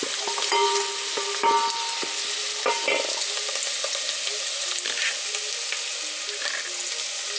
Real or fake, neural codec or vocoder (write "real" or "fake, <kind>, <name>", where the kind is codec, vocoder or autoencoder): real